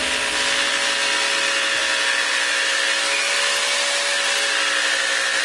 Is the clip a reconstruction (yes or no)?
no